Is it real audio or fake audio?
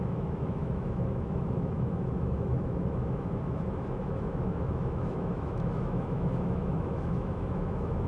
fake